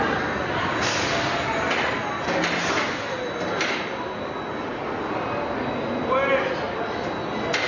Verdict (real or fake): real